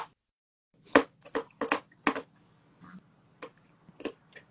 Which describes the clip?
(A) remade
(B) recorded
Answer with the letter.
B